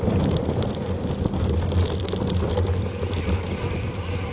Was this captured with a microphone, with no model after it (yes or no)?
yes